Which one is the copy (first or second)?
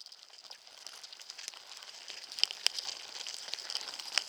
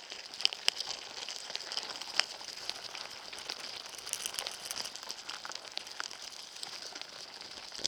first